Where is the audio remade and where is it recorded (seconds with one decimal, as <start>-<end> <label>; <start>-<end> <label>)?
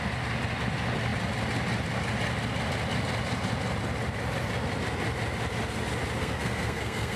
0.0-6.2 recorded; 6.2-7.2 remade